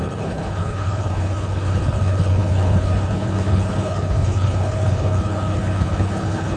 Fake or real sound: fake